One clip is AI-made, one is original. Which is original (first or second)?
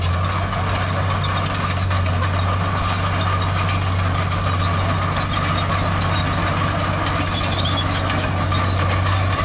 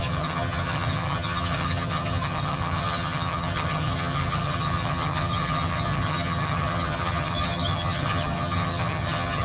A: first